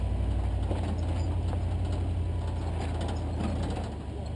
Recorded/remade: recorded